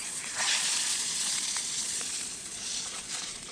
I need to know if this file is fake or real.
fake